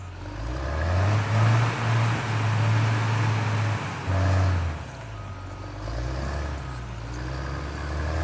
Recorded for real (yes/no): yes